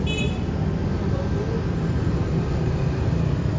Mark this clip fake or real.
real